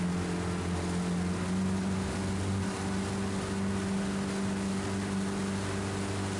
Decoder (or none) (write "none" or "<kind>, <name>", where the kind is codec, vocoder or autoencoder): none